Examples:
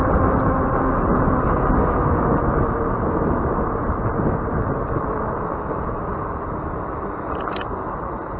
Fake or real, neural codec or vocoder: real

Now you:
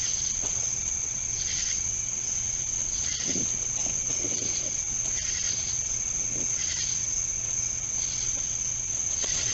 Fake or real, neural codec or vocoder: fake, vocoder, WaveNeXt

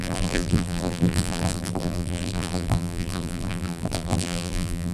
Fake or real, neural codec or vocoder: fake, vocoder, BigVGAN v2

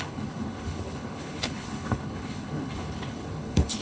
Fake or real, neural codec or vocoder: fake, codec, HILCodec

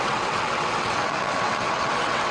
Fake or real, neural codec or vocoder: fake, vocoder, WaveNeXt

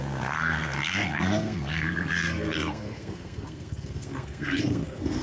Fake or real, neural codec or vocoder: fake, codec, SNAC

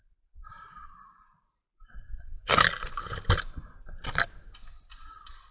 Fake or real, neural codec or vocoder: fake, vocoder, BigVGAN v2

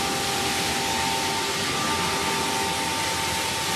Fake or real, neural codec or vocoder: real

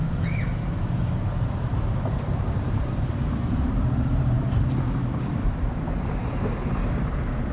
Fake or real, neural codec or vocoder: fake, vocoder, BigVGAN v2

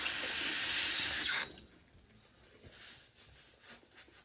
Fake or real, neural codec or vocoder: real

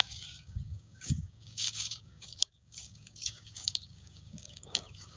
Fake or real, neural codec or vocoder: fake, codec, DAC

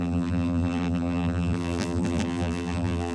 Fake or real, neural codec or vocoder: fake, vocoder, BigVGAN v2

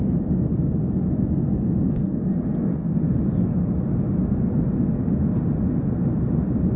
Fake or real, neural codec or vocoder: real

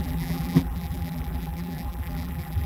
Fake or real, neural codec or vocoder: fake, vocoder, BigVGAN v2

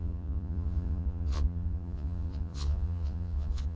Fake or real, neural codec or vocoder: fake, vocoder, Vocos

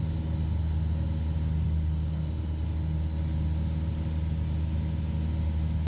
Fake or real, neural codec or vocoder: real